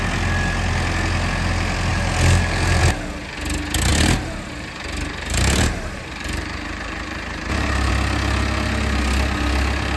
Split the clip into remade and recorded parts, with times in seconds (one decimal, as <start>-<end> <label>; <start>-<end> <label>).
0.0-1.9 recorded; 1.9-2.8 remade; 2.8-3.9 recorded; 3.9-7.9 remade; 7.9-10.0 recorded